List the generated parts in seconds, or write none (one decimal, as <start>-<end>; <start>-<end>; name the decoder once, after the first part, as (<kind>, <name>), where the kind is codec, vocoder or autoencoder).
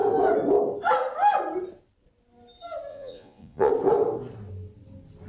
2.9-3.7 (vocoder, Vocos)